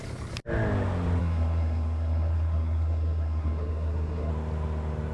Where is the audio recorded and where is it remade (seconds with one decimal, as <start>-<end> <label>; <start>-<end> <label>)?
0.0-1.2 recorded; 1.2-4.3 remade; 4.3-5.1 recorded